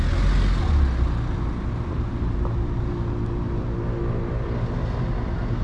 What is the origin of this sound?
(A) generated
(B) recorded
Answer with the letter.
B